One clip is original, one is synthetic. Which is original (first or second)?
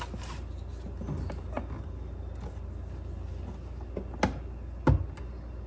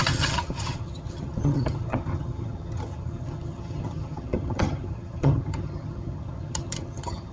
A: first